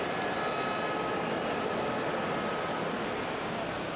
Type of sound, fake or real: real